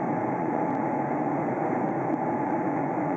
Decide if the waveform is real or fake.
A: fake